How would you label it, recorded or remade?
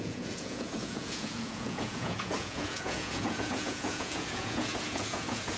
remade